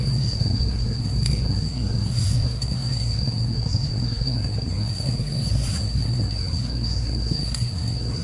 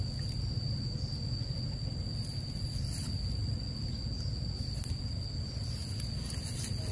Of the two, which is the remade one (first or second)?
first